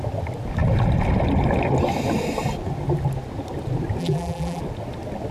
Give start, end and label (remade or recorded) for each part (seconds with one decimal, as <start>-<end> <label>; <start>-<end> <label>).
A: 0.0-4.0 recorded; 4.0-4.6 remade; 4.6-5.3 recorded